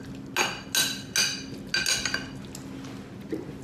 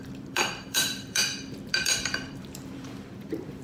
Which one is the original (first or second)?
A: first